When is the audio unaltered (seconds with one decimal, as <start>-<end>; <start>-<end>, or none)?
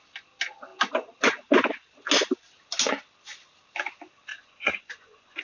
0.0-4.3